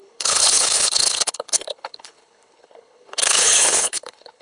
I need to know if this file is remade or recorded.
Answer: remade